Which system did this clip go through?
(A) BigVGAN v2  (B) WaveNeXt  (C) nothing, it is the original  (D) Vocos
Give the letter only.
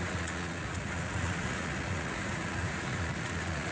D